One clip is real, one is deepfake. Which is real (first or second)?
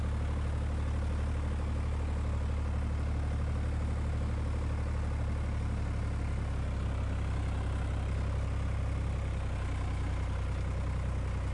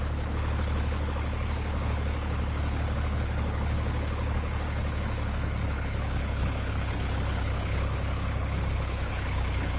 first